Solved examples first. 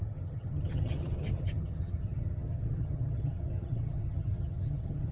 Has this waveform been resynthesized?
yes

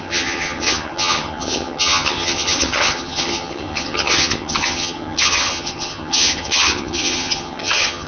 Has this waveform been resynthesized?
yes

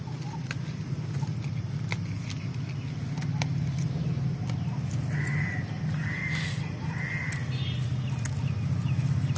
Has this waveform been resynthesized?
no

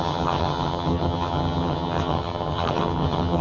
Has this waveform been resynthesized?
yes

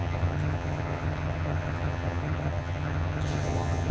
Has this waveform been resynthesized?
yes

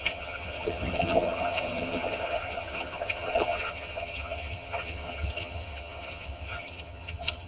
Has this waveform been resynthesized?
yes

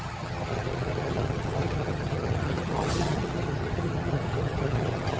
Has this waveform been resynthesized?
yes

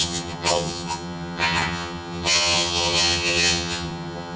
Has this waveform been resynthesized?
yes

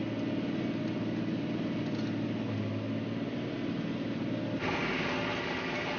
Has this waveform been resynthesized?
no